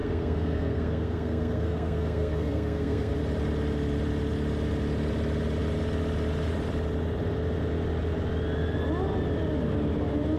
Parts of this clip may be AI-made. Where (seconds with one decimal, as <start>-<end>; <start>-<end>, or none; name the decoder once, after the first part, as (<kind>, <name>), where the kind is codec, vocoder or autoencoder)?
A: 0.0-3.2 (codec, SNAC)